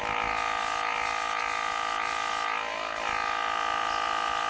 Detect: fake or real real